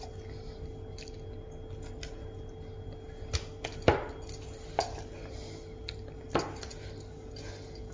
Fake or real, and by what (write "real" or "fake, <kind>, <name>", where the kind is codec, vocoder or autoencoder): real